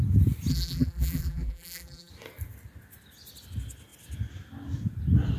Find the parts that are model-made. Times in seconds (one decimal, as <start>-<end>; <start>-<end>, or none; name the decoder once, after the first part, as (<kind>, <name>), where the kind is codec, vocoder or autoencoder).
0.5-2.1 (vocoder, BigVGAN v2)